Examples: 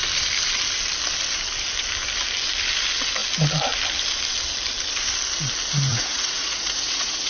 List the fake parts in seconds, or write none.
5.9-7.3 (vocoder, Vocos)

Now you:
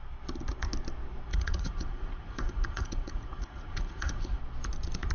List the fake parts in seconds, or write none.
1.3-4.4 (vocoder, Vocos)

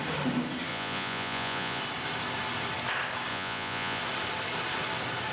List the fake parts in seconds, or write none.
0.7-1.8 (vocoder, Vocos); 3.3-4.0

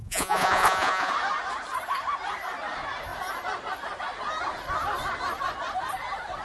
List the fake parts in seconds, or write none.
0.0-1.1 (vocoder, Vocos)

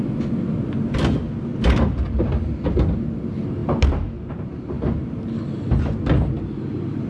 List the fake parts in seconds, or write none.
none

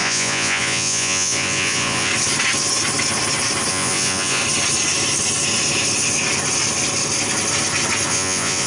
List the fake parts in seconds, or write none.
0.0-2.1 (vocoder, Vocos); 3.7-4.4; 8.1-8.7

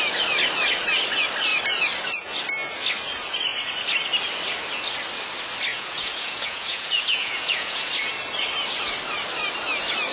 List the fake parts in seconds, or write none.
5.7-7.8 (vocoder, Vocos)